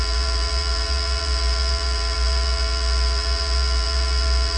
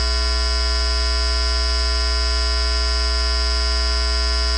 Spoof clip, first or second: first